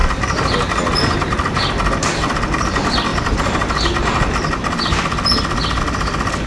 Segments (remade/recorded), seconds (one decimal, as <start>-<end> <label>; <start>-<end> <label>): 0.0-6.5 recorded

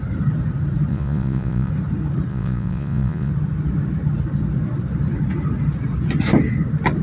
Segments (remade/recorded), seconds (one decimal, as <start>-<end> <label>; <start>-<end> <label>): 0.0-0.9 recorded; 0.9-1.7 remade; 1.7-2.3 recorded; 2.3-3.3 remade; 3.3-7.0 recorded

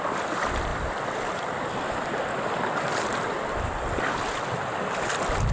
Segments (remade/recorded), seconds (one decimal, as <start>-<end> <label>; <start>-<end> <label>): 0.0-5.5 recorded